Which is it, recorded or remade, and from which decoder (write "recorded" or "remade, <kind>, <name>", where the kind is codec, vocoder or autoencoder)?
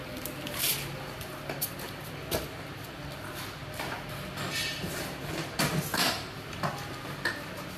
recorded